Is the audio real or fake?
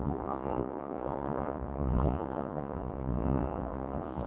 fake